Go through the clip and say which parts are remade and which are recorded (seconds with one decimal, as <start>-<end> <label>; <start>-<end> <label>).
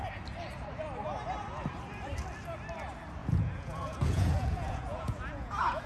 0.0-3.2 recorded; 3.2-5.9 remade